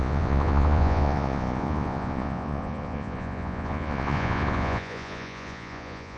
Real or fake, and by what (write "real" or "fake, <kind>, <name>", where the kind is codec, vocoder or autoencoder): fake, vocoder, Vocos